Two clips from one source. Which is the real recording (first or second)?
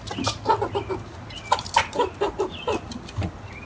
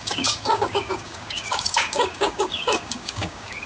first